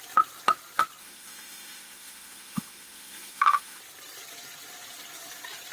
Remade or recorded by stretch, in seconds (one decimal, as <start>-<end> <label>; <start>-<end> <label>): 0.0-1.0 recorded; 1.0-3.8 remade; 3.8-5.7 recorded